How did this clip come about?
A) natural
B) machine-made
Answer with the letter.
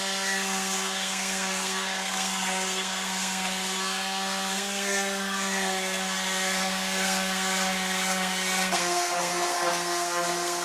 B